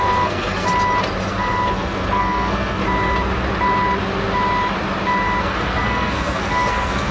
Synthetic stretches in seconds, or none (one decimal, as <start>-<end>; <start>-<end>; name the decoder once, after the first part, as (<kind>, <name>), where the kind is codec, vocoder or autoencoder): 0.0-0.7 (codec, SNAC); 1.3-2.8; 5.4-7.1